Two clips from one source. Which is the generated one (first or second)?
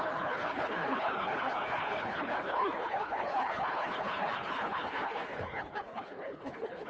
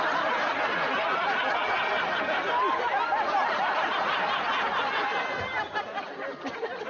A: first